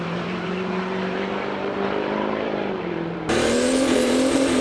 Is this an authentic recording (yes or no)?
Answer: no